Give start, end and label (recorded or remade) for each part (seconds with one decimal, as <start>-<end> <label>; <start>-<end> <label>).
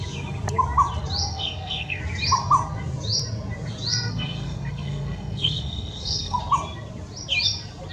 0.0-1.3 recorded; 1.3-2.0 remade; 2.0-3.9 recorded; 3.9-6.4 remade; 6.4-7.9 recorded